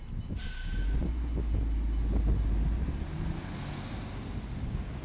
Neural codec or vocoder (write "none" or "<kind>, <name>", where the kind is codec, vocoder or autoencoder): none